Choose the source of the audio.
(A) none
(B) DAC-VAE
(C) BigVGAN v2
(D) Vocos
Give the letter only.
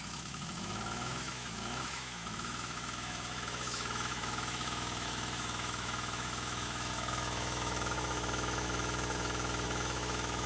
B